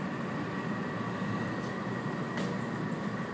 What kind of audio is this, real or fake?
real